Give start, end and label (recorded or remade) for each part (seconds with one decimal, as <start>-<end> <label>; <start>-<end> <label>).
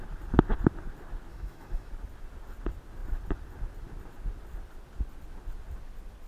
0.0-1.3 recorded; 1.3-1.9 remade; 1.9-6.3 recorded